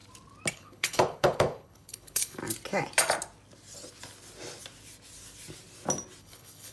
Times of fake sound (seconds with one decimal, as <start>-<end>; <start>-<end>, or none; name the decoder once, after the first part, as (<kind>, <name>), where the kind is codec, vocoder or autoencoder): 0.5-2.4 (codec, HILCodec); 6.2-6.7

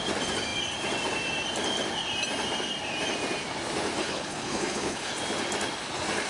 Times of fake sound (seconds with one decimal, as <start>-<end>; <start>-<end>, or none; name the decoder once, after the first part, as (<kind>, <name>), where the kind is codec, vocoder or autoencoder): 4.0-5.1 (codec, HILCodec)

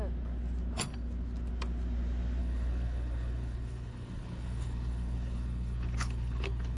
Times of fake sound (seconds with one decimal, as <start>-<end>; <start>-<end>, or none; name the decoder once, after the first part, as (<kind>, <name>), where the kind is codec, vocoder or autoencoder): 2.4-6.8 (codec, HILCodec)

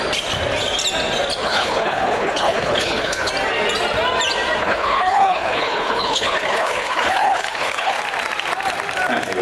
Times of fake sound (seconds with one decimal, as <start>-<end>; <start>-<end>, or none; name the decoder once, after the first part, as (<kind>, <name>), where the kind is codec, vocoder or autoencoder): 1.4-3.3 (codec, HILCodec); 4.6-8.0

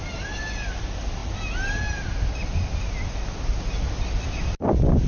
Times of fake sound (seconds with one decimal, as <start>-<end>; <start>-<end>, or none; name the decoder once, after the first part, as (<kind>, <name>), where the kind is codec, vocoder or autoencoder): none

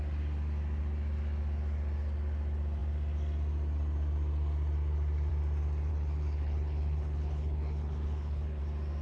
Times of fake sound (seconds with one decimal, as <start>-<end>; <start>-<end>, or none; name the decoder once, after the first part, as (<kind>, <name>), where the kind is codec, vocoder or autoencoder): 5.9-8.6 (codec, HILCodec)

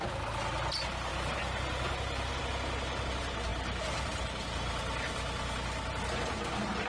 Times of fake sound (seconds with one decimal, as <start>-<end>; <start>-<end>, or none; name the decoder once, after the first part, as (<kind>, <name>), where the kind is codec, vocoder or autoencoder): none

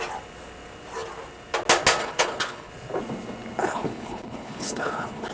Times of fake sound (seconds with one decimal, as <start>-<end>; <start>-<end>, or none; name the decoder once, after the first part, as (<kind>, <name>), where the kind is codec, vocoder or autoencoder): 2.0-2.7 (codec, HILCodec); 3.6-5.3